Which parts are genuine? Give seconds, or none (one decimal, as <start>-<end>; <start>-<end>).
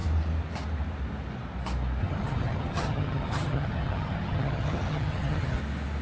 0.0-2.0; 5.6-6.0